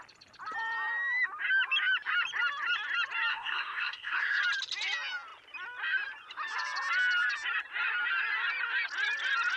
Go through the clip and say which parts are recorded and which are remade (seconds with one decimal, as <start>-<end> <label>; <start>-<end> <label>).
0.0-3.3 recorded; 3.3-4.4 remade; 4.4-9.6 recorded